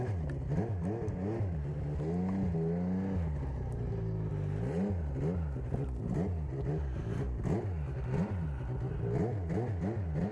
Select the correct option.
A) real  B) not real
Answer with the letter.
A